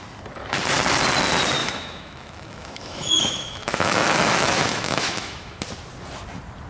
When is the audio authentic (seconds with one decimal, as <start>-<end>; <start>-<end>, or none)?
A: 0.0-1.6; 5.6-6.7